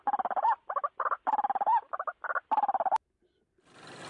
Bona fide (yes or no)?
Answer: yes